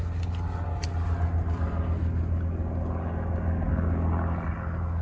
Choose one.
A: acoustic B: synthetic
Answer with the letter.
A